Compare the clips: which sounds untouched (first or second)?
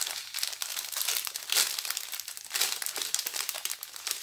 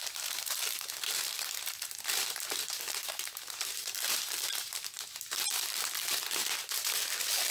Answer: first